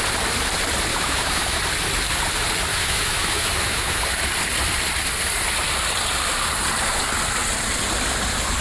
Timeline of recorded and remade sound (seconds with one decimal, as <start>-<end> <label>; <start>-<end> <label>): 0.0-0.9 recorded; 0.9-1.6 remade; 1.6-2.7 recorded; 2.7-4.0 remade; 4.0-8.6 recorded